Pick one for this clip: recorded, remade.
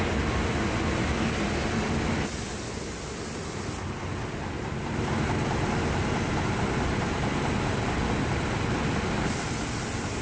recorded